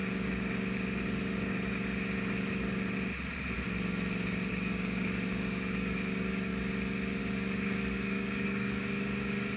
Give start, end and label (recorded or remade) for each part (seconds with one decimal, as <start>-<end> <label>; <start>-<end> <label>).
0.0-4.5 recorded; 4.5-6.5 remade; 6.5-7.2 recorded; 7.2-9.6 remade